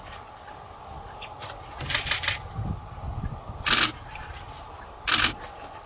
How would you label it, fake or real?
real